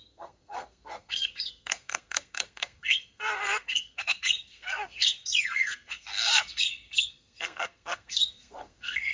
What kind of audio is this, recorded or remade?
remade